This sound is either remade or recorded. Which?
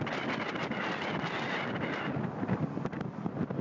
recorded